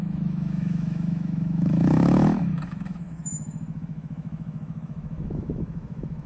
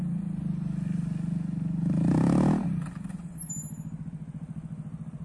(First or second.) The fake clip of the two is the first